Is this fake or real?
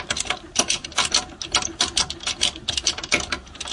real